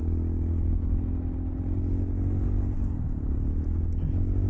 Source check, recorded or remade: recorded